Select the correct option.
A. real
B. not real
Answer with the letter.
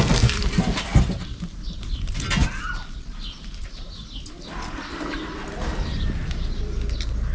A